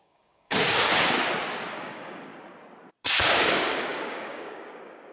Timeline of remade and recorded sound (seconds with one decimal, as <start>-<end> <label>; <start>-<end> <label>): 0.0-1.2 remade; 1.2-1.8 recorded; 1.8-2.3 remade; 2.3-3.4 recorded; 3.4-5.1 remade